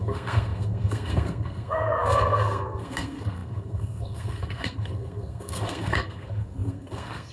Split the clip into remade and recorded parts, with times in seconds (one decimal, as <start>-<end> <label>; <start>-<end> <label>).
0.0-7.3 remade